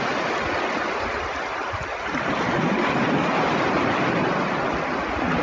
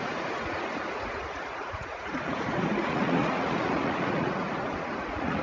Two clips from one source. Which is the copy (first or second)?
second